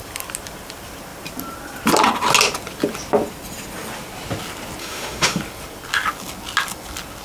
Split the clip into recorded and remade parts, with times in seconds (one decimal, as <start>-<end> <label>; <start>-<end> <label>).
0.0-4.8 recorded; 4.8-5.4 remade; 5.4-7.2 recorded